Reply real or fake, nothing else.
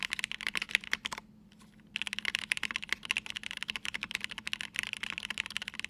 real